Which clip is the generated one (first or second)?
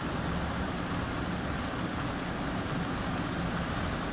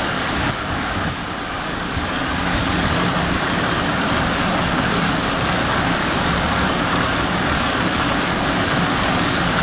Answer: second